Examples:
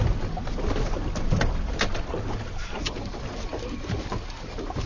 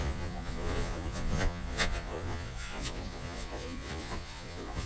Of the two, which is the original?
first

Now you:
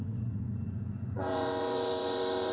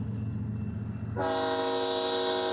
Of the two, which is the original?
second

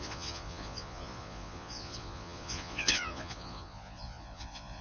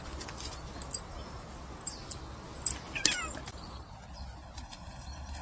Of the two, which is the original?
second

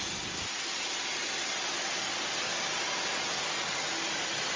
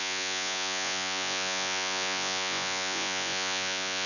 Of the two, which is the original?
first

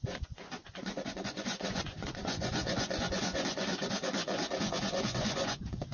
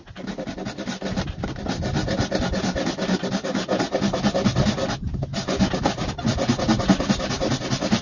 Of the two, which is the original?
second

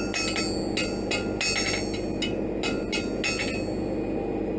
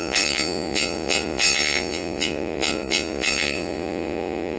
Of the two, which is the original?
first